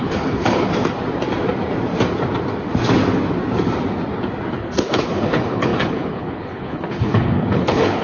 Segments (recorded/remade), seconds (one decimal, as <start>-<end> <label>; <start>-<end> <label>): 0.0-0.7 remade; 0.7-4.5 recorded; 4.5-8.0 remade